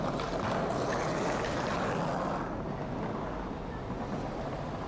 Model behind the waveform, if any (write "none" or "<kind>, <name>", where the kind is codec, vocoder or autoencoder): none